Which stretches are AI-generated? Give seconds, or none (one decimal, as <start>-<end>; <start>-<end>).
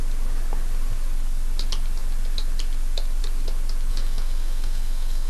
3.9-5.3